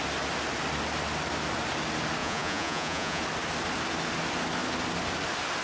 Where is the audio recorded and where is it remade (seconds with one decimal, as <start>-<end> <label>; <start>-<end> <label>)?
0.0-2.2 recorded; 2.2-3.2 remade; 3.2-5.6 recorded